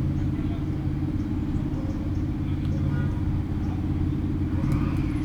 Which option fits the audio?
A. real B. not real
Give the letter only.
A